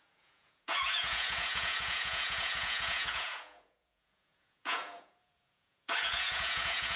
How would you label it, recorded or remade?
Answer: remade